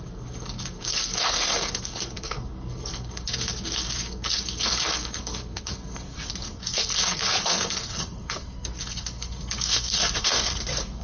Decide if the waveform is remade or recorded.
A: remade